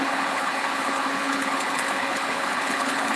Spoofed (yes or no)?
yes